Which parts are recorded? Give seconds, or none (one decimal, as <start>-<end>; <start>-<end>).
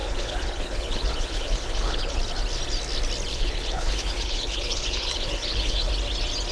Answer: 2.2-3.3; 5.9-6.5